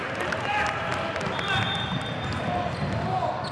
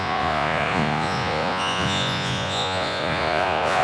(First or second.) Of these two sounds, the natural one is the first